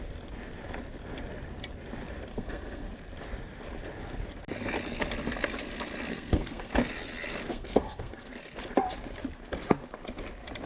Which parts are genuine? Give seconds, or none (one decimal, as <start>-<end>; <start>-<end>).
0.0-2.3; 2.9-6.1; 6.7-7.5; 8.3-10.7